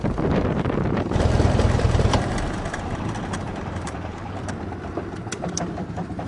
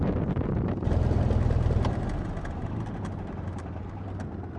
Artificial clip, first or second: first